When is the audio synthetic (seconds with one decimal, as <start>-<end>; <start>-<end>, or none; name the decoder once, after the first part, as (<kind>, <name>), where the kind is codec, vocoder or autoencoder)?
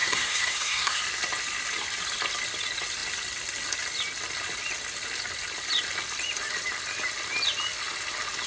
0.0-1.0 (codec, SNAC)